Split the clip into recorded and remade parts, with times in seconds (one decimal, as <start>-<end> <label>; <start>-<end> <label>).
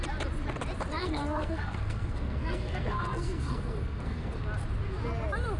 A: 0.0-1.0 recorded; 1.0-4.4 remade; 4.4-5.6 recorded